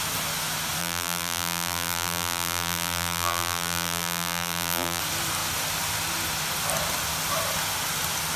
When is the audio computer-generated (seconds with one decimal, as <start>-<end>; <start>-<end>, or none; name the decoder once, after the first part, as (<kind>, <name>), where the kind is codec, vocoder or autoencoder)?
0.8-5.0 (vocoder, BigVGAN v2)